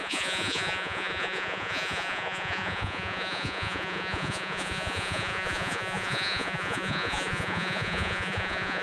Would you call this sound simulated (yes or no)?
yes